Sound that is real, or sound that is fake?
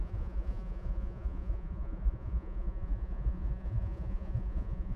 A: fake